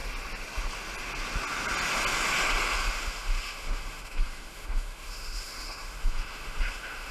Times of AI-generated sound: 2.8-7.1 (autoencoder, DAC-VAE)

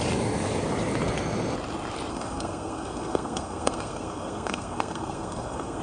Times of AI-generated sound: 2.1-5.8 (codec, SNAC)

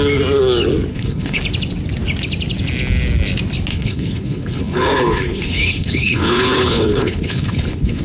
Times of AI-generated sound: 0.9-1.4 (codec, HILCodec); 3.7-8.0

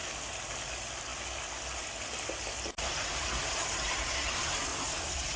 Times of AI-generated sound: none